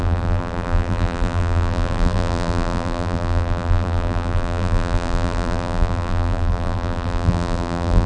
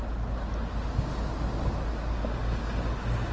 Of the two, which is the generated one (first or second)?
first